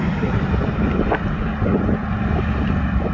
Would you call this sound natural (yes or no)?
yes